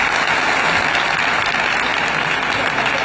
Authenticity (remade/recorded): recorded